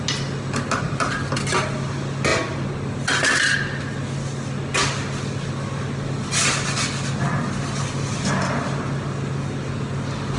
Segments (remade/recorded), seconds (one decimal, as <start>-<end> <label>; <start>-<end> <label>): 0.0-10.4 recorded